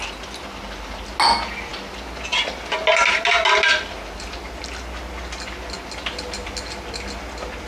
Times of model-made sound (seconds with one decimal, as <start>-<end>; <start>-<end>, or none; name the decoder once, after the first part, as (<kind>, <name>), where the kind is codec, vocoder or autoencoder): none